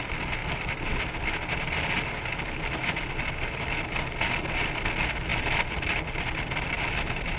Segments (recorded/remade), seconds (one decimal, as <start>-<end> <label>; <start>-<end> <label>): 0.0-0.4 recorded; 0.4-1.0 remade; 1.0-7.4 recorded